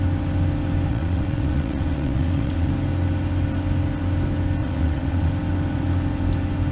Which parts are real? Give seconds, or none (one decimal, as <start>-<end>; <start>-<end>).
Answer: 0.0-0.9; 2.7-4.6; 5.3-6.7